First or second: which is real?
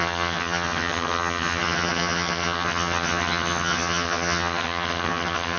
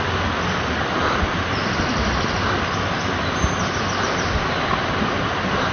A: second